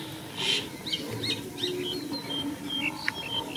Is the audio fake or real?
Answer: real